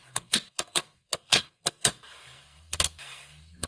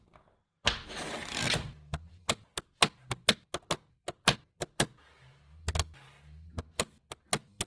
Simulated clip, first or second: first